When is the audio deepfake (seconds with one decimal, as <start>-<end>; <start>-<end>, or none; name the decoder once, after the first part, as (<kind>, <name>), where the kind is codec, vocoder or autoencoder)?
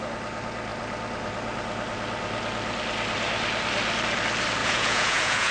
4.6-5.5 (vocoder, Vocos)